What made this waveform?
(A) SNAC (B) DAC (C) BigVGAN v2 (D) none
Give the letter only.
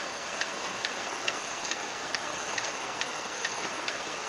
A